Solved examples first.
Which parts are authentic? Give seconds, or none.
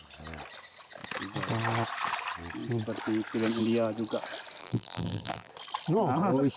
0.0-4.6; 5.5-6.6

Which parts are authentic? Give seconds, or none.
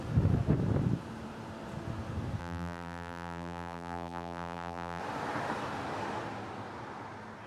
0.0-2.4; 5.0-7.5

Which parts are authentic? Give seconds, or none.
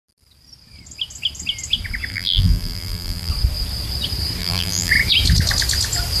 0.0-2.1; 3.3-4.4; 4.9-6.2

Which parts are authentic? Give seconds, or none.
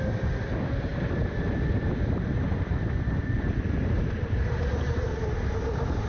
0.0-0.9; 4.6-6.1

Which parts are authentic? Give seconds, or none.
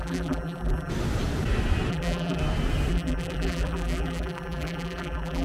0.9-1.9; 2.4-2.9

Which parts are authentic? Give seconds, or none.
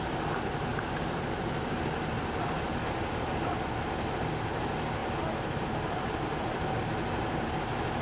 0.0-0.7; 1.5-5.0; 6.7-8.0